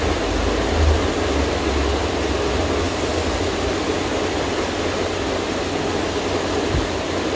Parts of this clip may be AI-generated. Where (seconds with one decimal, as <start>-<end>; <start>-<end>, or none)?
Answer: none